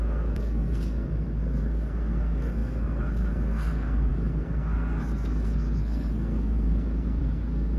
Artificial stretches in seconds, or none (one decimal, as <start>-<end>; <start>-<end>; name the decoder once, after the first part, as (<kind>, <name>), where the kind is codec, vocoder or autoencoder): 0.0-7.8 (codec, SNAC)